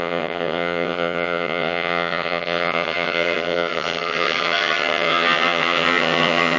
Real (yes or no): no